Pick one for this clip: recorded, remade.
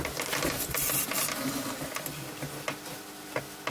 recorded